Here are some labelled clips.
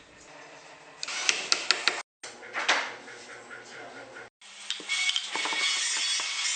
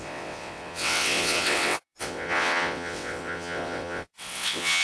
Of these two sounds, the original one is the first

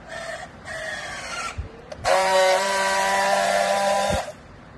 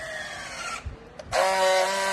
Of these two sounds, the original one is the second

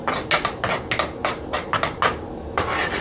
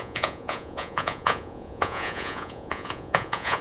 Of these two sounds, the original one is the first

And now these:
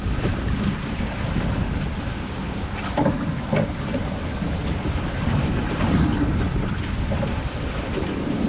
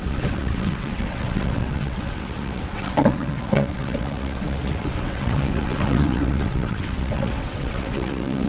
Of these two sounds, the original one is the first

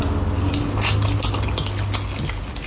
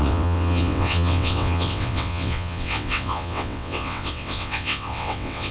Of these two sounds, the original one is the first